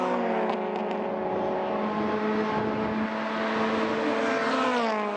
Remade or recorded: recorded